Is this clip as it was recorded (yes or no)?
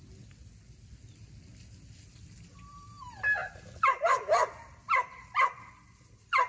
yes